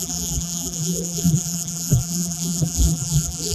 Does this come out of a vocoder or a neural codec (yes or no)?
yes